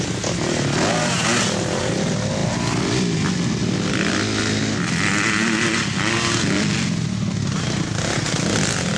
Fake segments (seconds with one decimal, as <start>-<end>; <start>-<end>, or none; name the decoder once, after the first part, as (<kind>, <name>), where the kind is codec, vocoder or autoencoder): none